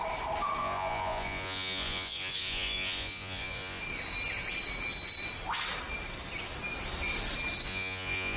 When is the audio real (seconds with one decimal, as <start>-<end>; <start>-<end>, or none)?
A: 0.0-0.6; 3.8-7.7